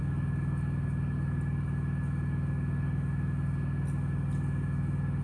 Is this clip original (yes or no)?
yes